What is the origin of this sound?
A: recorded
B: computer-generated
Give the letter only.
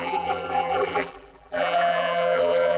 B